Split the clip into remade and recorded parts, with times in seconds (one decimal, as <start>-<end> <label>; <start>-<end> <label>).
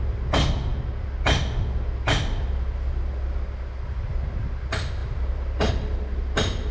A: 0.0-6.7 recorded